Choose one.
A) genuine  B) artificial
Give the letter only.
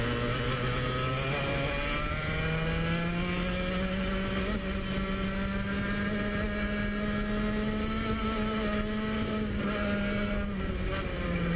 A